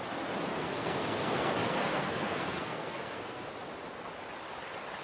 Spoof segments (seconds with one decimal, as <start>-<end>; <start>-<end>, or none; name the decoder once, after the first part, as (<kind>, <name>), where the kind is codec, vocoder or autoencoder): 0.5-3.5 (codec, SNAC)

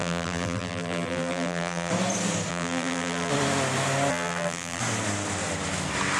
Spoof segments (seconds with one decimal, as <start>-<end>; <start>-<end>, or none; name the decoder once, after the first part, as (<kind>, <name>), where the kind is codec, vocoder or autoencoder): 0.0-1.9 (vocoder, BigVGAN v2); 2.5-3.3; 4.1-4.8

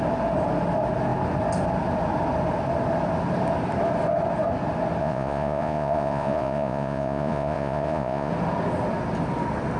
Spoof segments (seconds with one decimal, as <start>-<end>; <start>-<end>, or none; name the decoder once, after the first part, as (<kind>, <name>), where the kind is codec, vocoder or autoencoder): 5.0-8.3 (vocoder, Vocos)

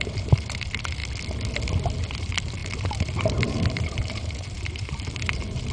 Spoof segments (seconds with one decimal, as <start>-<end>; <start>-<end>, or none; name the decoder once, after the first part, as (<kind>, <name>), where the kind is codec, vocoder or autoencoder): 0.0-1.0 (vocoder, BigVGAN v2); 2.2-5.7

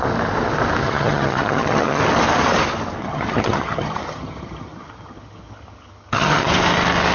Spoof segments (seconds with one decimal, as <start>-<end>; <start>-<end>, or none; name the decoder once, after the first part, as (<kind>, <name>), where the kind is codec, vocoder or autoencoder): 0.8-2.0 (vocoder, HiFi-GAN); 3.0-6.5